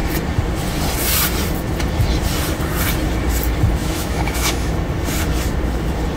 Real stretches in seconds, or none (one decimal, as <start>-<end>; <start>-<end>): 0.0-3.8; 4.7-6.2